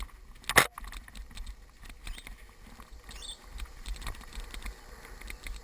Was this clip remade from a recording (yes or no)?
no